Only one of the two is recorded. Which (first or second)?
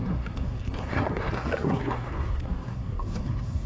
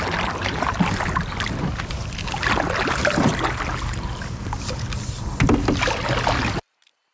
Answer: second